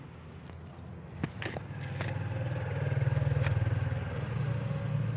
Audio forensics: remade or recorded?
recorded